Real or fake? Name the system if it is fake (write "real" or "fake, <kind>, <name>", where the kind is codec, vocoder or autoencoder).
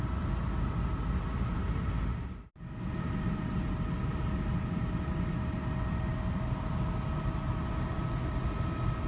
real